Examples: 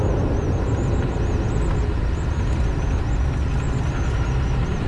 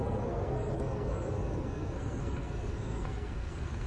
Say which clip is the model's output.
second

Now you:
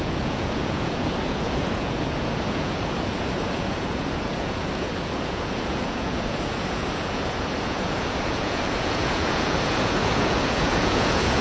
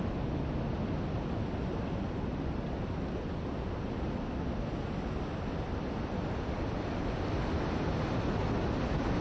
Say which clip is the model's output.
first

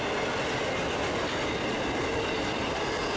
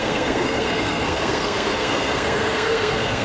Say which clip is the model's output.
second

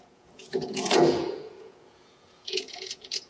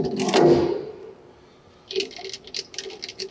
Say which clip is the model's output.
first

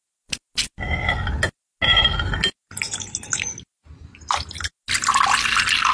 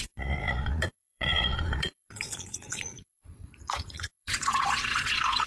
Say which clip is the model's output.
second